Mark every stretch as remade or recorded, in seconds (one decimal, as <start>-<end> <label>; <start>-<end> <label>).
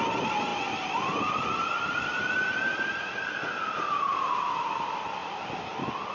0.0-6.1 recorded